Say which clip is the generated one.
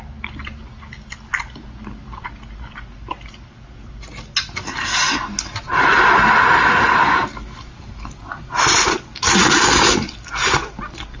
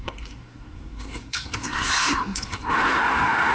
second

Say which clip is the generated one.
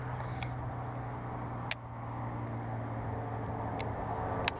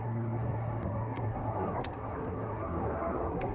second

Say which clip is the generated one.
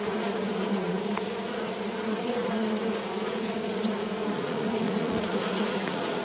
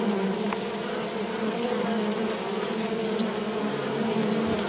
first